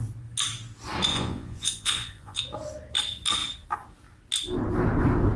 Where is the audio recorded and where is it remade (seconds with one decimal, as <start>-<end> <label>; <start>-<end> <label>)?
0.0-1.1 recorded; 1.1-2.4 remade; 2.4-5.4 recorded